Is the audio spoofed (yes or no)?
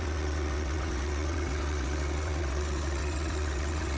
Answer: yes